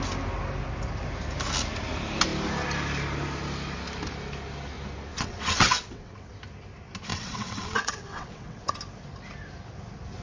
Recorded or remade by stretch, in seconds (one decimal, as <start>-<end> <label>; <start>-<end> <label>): 0.0-5.1 recorded; 5.1-6.3 remade; 6.3-7.1 recorded; 7.1-8.7 remade; 8.7-10.2 recorded